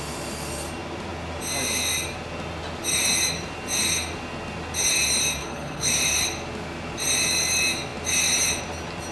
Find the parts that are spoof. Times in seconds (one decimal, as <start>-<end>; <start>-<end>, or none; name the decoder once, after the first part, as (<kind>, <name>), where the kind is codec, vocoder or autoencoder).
5.4-5.9 (codec, HILCodec)